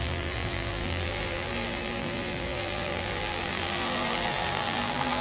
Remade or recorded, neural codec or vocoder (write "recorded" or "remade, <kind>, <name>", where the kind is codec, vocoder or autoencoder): remade, vocoder, BigVGAN v2